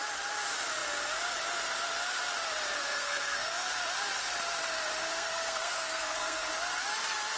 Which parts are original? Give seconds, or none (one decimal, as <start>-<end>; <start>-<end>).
0.0-2.9; 3.7-5.0; 6.5-7.4